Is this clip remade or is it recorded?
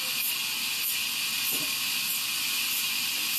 recorded